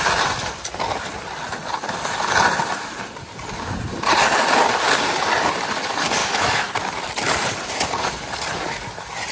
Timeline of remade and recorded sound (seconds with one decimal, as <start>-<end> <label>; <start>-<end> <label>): 0.0-6.2 recorded; 6.2-6.7 remade; 6.7-9.3 recorded